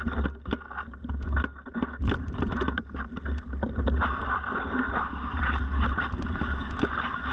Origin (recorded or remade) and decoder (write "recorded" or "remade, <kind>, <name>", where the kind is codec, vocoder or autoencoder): recorded